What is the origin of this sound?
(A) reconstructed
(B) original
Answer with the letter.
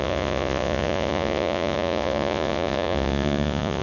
A